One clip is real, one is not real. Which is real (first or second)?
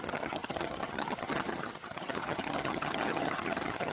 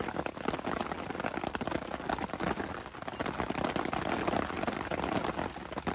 second